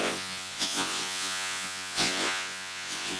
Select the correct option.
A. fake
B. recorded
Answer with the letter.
A